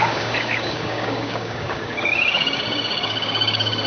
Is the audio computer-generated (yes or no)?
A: yes